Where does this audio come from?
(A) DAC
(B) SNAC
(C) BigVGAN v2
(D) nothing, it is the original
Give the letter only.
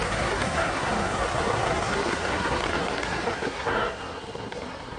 B